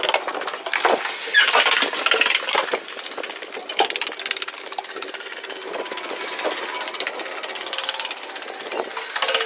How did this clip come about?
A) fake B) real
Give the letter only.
B